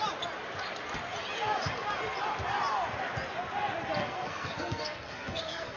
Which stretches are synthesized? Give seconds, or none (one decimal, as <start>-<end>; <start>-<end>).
4.0-5.8